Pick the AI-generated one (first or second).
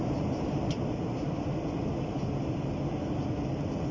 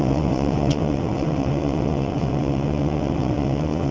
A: second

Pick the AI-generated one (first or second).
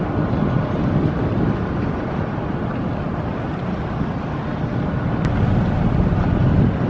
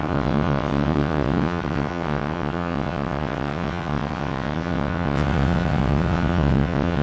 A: second